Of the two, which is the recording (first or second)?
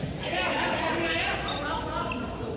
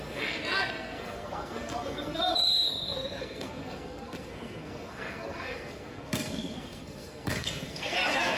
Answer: first